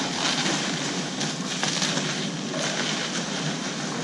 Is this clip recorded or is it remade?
remade